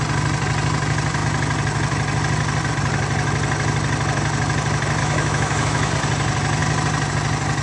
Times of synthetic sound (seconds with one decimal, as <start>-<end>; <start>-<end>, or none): 5.0-5.9